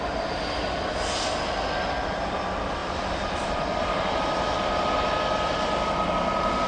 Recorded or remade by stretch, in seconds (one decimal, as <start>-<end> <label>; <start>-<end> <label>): 0.0-6.7 recorded